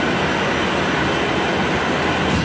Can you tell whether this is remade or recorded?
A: recorded